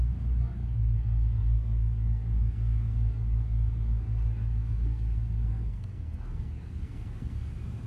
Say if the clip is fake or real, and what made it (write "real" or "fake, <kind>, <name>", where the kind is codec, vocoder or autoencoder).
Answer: fake, codec, SNAC